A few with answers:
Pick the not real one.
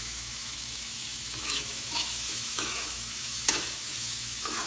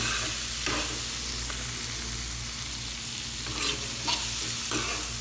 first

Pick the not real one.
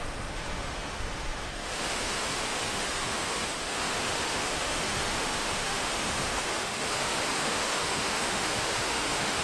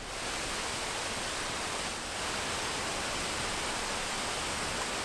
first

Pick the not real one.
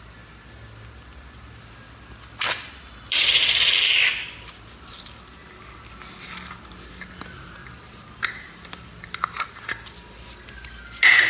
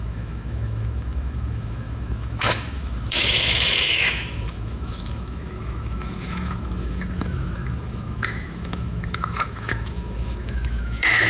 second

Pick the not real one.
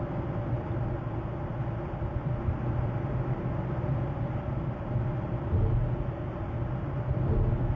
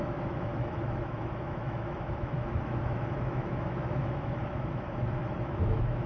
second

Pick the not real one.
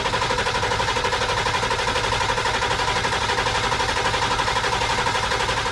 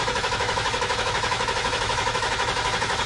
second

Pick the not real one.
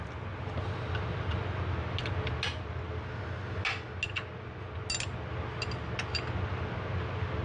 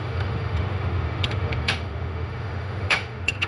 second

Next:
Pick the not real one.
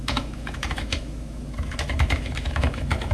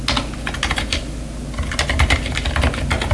first